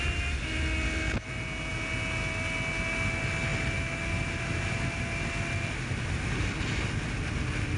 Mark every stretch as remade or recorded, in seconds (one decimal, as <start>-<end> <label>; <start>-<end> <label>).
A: 0.0-7.8 recorded